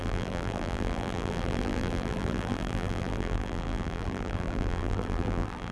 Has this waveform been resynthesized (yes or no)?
yes